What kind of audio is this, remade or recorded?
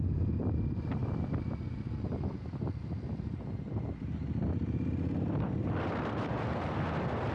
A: recorded